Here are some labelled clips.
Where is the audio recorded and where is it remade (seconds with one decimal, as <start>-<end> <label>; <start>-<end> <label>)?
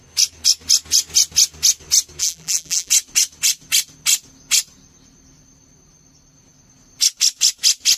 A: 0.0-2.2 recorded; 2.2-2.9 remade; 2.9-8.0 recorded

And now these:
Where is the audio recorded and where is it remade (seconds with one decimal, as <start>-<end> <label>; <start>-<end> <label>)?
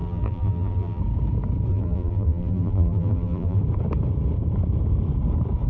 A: 0.0-1.0 remade; 1.0-1.7 recorded; 1.7-3.6 remade; 3.6-5.7 recorded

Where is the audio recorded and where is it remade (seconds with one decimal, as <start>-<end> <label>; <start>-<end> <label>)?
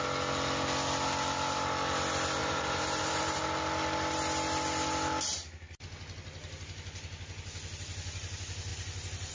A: 0.0-2.4 recorded; 2.4-3.4 remade; 3.4-9.3 recorded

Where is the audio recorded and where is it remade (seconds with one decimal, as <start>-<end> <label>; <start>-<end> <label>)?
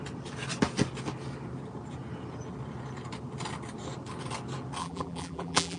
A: 0.0-4.8 recorded; 4.8-5.8 remade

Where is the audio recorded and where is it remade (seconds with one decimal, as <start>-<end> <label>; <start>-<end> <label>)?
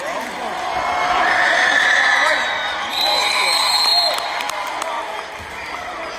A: 0.0-6.2 recorded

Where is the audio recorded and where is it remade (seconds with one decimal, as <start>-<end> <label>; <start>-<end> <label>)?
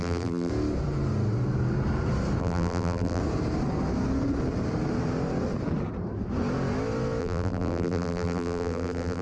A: 0.0-0.5 remade; 0.5-2.4 recorded; 2.4-3.2 remade; 3.2-7.2 recorded; 7.2-9.2 remade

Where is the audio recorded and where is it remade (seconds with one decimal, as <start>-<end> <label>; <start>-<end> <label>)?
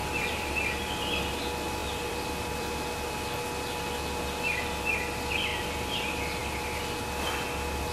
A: 0.0-0.8 remade; 0.8-1.8 recorded; 1.8-2.9 remade; 2.9-5.5 recorded; 5.5-6.0 remade; 6.0-6.4 recorded; 6.4-7.0 remade; 7.0-7.9 recorded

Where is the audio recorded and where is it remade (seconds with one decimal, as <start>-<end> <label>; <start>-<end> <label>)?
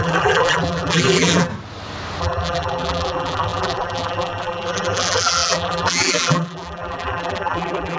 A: 0.0-1.5 remade; 1.5-2.2 recorded; 2.2-8.0 remade